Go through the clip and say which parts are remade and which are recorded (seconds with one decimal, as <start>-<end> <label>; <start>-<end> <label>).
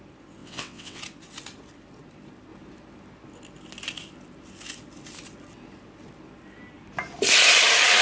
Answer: 0.0-0.4 recorded; 0.4-1.0 remade; 1.0-8.0 recorded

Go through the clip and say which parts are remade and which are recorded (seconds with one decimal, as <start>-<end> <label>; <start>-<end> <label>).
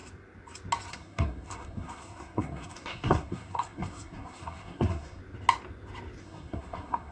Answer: 0.0-0.9 recorded; 0.9-5.2 remade; 5.2-6.2 recorded; 6.2-7.1 remade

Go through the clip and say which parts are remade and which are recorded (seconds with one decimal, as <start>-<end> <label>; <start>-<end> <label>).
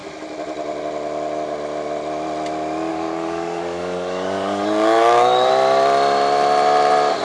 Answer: 0.0-2.9 recorded; 2.9-5.5 remade; 5.5-7.2 recorded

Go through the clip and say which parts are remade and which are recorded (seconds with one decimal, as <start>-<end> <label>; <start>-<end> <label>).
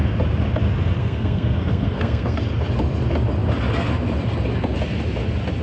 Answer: 0.0-1.0 recorded; 1.0-2.4 remade; 2.4-5.6 recorded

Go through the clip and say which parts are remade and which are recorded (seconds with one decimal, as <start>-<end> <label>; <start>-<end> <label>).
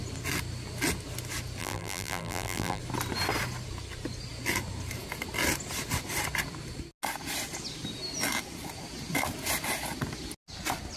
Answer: 0.0-1.6 recorded; 1.6-2.8 remade; 2.8-11.0 recorded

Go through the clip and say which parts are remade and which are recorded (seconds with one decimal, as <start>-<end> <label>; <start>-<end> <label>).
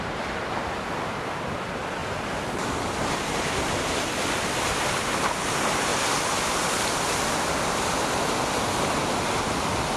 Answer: 0.0-2.0 recorded; 2.0-3.2 remade; 3.2-5.9 recorded; 5.9-8.1 remade; 8.1-10.0 recorded